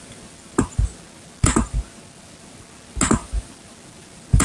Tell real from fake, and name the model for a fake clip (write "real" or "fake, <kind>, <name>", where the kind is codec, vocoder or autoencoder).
real